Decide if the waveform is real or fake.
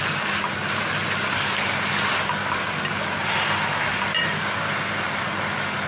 real